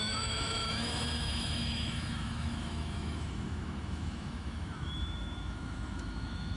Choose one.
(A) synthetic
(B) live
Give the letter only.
A